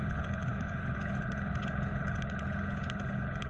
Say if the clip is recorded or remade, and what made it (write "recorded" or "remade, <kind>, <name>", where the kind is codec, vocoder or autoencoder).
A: remade, codec, HILCodec